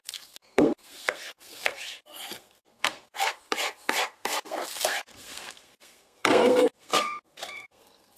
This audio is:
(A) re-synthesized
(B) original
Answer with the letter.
A